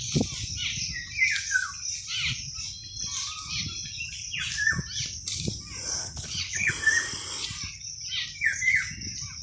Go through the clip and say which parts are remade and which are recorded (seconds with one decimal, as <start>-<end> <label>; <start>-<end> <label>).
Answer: 0.0-6.0 recorded; 6.0-6.7 remade; 6.7-9.4 recorded